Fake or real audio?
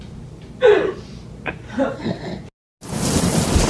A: real